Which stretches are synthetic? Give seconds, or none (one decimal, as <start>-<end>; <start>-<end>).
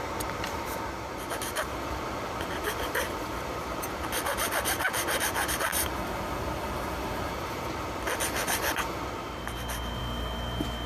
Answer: none